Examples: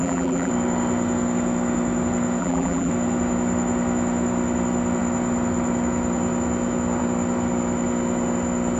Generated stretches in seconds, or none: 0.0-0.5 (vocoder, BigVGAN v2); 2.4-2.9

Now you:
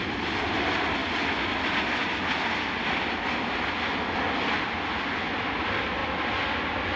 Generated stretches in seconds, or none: none